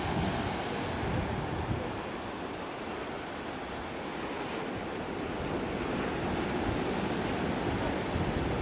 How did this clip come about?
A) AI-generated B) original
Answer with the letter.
B